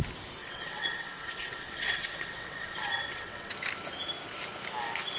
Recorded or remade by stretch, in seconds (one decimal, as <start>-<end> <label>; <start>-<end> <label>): 0.0-0.4 recorded; 0.4-3.5 remade; 3.5-5.2 recorded